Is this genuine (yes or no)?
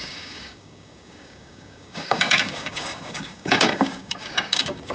no